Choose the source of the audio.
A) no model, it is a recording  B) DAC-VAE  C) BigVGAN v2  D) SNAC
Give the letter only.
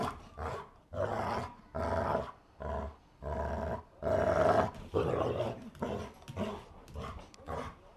A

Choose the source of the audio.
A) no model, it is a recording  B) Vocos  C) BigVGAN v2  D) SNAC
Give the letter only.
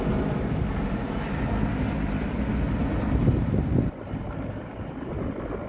A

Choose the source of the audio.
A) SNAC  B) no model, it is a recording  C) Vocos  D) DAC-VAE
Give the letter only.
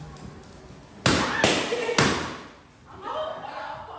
B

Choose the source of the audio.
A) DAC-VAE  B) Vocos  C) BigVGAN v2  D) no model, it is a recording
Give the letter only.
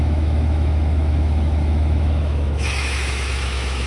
A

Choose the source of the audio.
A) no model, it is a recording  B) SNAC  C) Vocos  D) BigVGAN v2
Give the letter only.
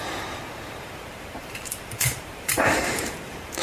D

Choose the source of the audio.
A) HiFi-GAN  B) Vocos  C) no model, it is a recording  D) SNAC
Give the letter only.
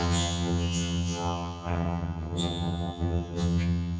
A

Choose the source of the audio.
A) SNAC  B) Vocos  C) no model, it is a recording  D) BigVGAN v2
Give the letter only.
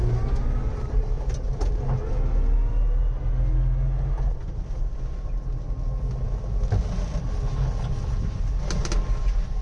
C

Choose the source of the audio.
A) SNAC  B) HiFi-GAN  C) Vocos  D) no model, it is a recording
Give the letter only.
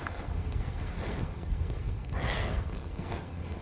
A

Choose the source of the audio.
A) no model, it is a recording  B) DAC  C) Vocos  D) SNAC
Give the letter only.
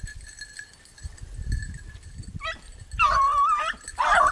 A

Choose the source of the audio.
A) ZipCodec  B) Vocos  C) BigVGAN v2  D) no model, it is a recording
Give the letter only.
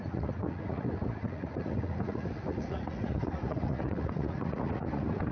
B